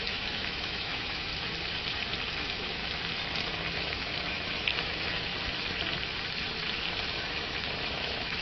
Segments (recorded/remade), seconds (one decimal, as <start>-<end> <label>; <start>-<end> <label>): 0.0-1.3 remade; 1.3-2.4 recorded; 2.4-2.8 remade; 2.8-3.8 recorded; 3.8-5.3 remade; 5.3-7.1 recorded; 7.1-8.4 remade